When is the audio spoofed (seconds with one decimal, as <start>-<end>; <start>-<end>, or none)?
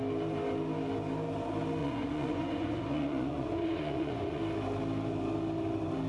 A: 1.8-4.4